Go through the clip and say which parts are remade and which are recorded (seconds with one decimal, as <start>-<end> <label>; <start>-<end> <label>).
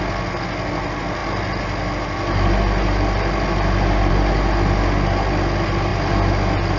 0.0-6.8 recorded